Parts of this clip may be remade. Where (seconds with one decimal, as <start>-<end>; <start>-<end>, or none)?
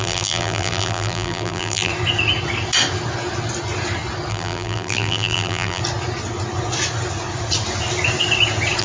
0.0-1.9; 4.3-5.8